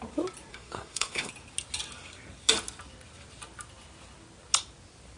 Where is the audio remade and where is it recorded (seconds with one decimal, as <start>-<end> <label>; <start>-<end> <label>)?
0.0-0.5 recorded; 0.5-1.3 remade; 1.3-5.2 recorded